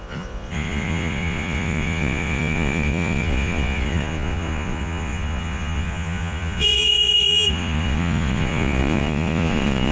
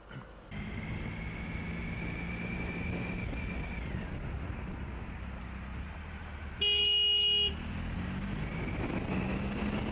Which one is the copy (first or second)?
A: first